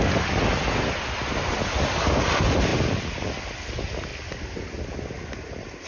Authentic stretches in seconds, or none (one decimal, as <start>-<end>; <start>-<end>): 0.0-5.9